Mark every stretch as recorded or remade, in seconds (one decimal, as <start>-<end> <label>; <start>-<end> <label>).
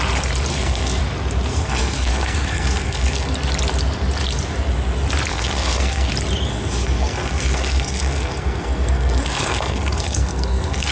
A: 0.0-0.5 recorded; 0.5-1.0 remade; 1.0-1.5 recorded; 1.5-3.3 remade; 3.3-5.3 recorded; 5.3-6.1 remade; 6.1-6.5 recorded; 6.5-10.9 remade